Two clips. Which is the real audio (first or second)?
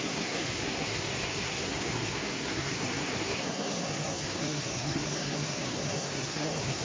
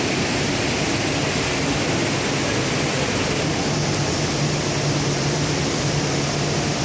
second